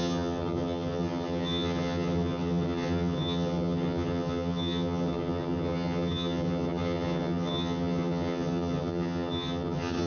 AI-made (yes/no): yes